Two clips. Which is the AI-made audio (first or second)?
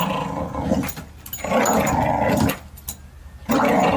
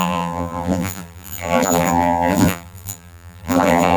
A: second